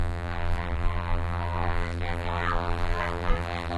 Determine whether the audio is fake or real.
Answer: fake